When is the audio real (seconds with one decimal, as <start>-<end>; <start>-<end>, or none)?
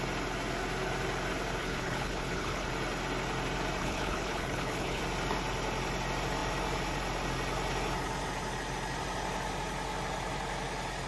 0.0-1.6; 2.7-3.8; 5.0-11.1